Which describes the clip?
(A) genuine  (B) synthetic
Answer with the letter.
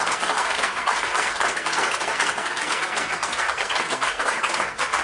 B